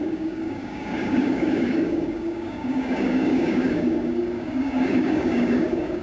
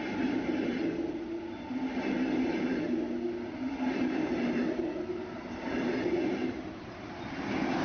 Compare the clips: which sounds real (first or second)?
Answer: second